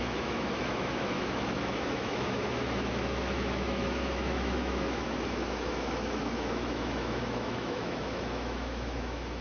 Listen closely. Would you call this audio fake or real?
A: fake